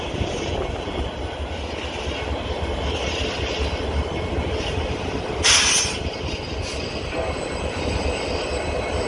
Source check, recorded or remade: recorded